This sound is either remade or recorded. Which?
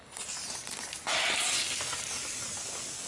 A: recorded